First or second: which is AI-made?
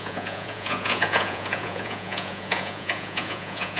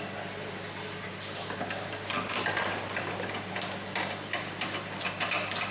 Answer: first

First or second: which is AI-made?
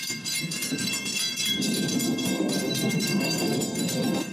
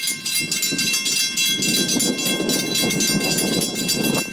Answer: first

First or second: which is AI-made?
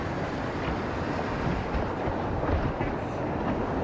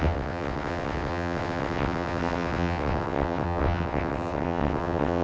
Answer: second